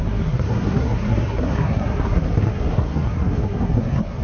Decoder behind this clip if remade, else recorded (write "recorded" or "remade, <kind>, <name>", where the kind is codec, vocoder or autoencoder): remade, codec, SNAC